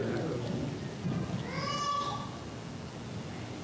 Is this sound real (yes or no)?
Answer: yes